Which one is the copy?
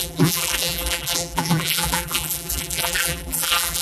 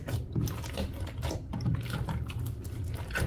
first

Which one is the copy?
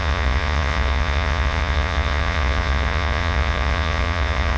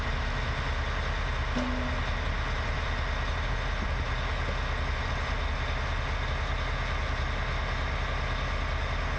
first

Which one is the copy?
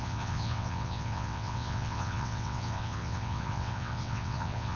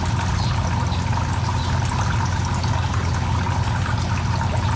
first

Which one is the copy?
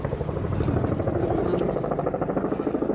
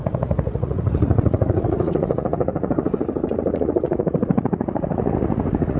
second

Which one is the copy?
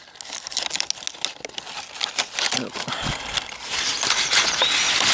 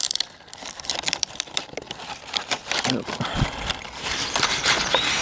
second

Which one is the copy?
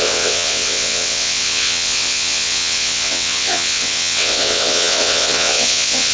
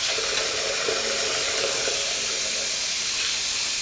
first